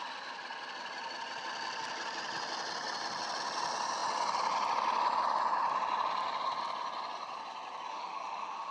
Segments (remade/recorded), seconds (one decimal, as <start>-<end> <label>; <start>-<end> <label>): 0.0-7.9 recorded; 7.9-8.7 remade